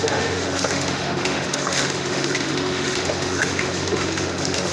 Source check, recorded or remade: remade